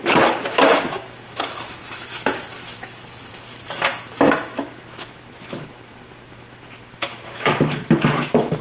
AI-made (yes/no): yes